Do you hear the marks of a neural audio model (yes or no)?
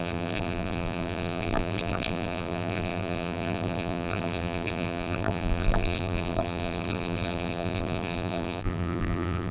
yes